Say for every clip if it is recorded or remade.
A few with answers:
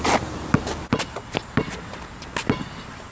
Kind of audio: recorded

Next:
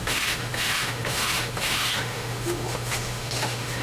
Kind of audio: remade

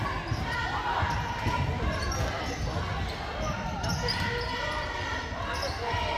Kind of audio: recorded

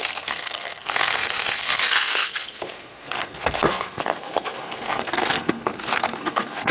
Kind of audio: remade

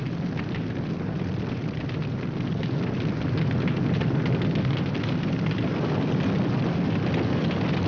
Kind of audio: recorded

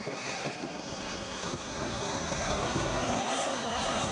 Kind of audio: remade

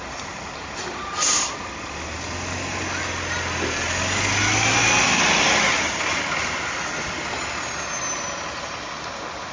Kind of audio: recorded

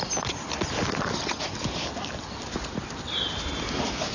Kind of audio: recorded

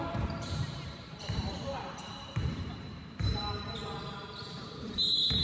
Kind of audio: remade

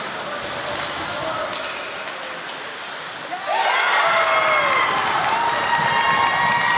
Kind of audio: recorded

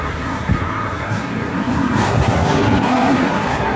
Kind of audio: remade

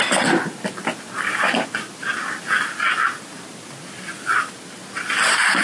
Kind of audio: recorded